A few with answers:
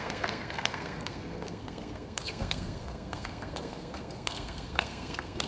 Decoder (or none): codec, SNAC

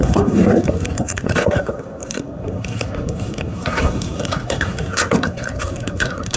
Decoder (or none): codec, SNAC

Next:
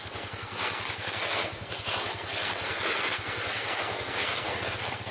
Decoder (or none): codec, SNAC